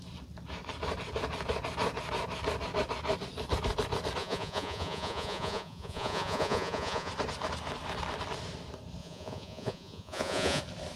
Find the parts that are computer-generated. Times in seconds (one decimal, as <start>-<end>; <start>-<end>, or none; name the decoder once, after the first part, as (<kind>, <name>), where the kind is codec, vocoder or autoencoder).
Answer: 4.2-7.1 (vocoder, Vocos); 9.0-10.6